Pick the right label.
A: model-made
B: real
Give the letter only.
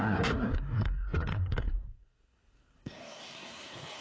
A